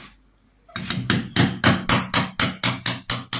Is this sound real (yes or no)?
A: yes